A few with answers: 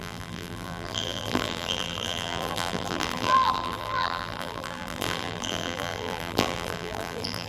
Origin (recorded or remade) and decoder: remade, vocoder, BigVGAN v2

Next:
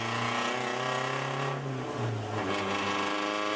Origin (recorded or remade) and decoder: recorded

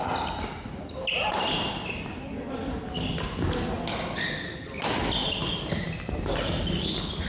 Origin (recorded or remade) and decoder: recorded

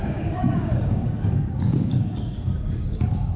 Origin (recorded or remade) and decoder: remade, codec, DAC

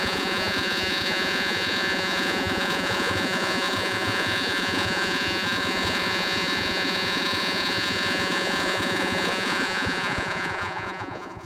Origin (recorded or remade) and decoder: remade, vocoder, Vocos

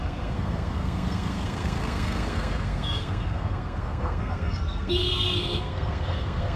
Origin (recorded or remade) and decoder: remade, codec, SNAC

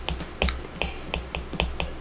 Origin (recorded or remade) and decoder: recorded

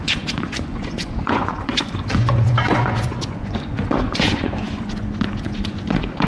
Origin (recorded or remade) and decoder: remade, vocoder, Vocos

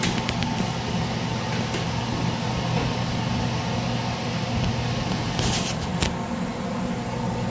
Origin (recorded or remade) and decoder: recorded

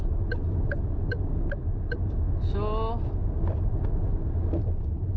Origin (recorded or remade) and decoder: recorded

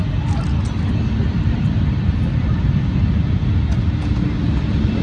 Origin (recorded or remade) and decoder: recorded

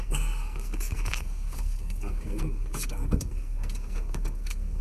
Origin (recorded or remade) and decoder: remade, codec, SNAC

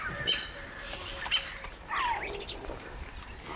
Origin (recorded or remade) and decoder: recorded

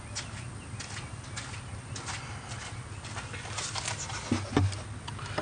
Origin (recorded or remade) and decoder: recorded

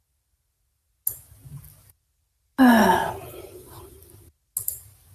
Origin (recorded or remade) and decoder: recorded